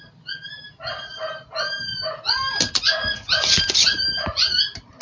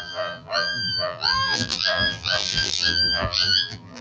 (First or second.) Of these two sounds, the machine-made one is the second